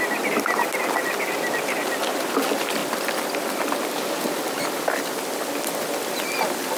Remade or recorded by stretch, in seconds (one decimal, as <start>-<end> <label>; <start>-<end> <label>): 0.0-2.8 recorded; 2.8-3.8 remade; 3.8-6.8 recorded